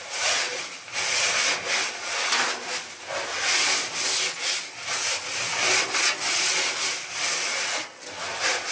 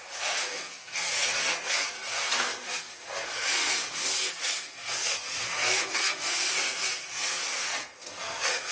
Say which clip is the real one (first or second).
first